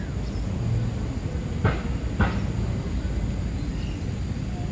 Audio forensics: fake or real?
real